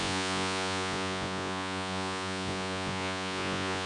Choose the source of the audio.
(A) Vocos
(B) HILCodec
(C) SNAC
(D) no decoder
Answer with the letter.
A